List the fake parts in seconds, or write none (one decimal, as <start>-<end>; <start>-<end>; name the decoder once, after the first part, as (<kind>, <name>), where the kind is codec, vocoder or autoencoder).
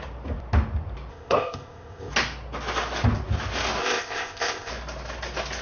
1.1-2.1 (codec, ZipCodec); 3.8-4.7